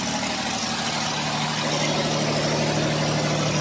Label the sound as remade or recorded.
recorded